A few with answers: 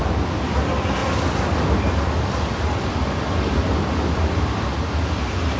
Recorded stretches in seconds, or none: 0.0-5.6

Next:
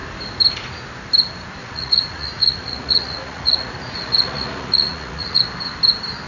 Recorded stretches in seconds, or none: 0.0-1.6; 5.4-6.3

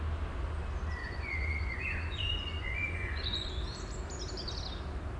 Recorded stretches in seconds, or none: 0.0-1.0; 3.5-5.2